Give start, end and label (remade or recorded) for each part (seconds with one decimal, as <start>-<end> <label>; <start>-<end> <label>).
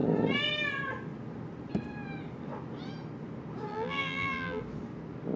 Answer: 0.0-3.7 recorded; 3.7-4.6 remade; 4.6-5.4 recorded